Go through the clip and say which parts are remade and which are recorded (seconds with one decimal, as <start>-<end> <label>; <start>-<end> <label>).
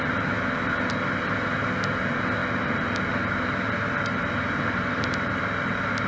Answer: 0.0-6.1 recorded